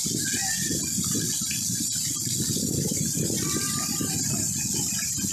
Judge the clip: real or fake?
real